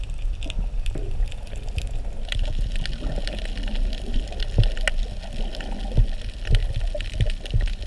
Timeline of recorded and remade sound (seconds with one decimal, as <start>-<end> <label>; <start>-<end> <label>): 0.0-7.9 recorded